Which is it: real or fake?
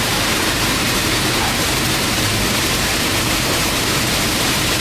fake